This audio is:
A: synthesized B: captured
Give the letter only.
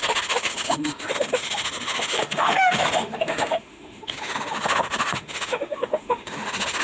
A